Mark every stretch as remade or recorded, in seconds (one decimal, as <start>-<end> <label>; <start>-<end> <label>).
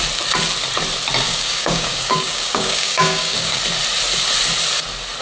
0.0-1.3 recorded; 1.3-3.6 remade; 3.6-5.2 recorded